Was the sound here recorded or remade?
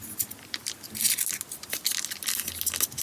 recorded